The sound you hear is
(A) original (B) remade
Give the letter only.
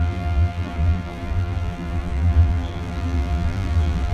B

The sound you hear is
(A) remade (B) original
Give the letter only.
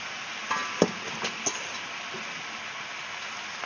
B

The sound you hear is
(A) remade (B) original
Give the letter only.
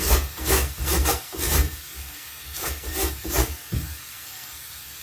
A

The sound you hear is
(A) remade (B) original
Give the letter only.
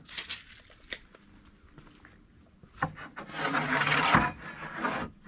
B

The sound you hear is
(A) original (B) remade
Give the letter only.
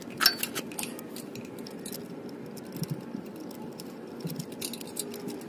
A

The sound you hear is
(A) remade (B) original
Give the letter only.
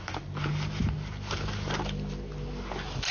B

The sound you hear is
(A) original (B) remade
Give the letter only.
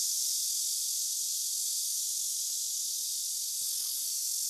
A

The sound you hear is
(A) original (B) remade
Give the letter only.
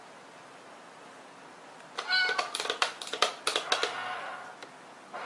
A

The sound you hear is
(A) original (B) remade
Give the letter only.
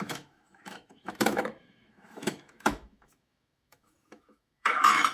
B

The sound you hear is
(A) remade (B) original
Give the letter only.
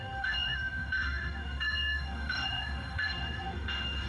A